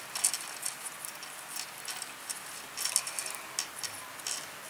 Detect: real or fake real